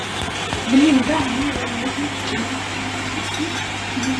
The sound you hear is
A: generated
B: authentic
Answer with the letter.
B